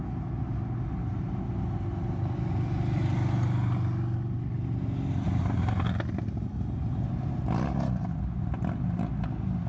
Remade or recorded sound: recorded